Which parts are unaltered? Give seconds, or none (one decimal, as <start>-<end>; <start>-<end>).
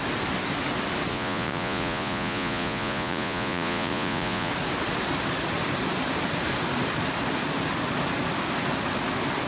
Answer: 0.0-1.1; 4.5-9.5